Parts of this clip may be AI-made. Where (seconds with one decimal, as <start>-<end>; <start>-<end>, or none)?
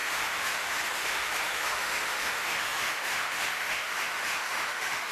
0.0-5.1